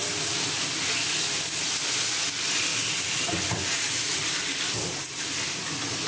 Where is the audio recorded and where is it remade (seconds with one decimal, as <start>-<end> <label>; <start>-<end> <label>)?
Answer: 0.0-6.1 recorded

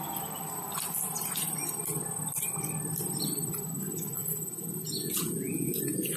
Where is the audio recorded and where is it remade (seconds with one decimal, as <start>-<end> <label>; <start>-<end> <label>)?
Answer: 0.0-4.2 recorded; 4.2-5.8 remade; 5.8-6.2 recorded

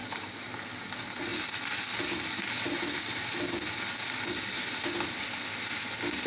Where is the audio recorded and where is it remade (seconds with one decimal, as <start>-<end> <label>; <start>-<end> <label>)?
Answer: 0.0-6.3 recorded

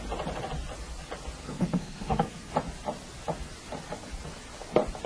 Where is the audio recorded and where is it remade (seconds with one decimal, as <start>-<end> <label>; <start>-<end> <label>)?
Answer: 0.0-1.4 recorded; 1.4-2.5 remade; 2.5-5.1 recorded

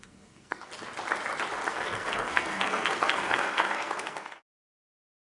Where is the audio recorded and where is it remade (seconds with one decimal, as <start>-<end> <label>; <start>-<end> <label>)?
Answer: 0.0-0.7 remade; 0.7-1.7 recorded; 1.7-5.2 remade